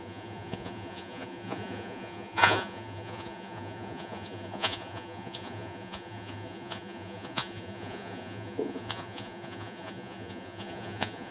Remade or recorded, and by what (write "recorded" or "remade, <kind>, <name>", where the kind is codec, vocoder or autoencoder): remade, vocoder, Vocos